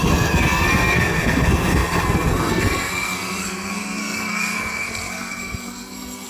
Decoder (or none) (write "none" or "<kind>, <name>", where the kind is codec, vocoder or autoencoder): codec, SNAC